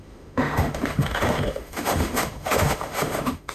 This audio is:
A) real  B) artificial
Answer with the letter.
B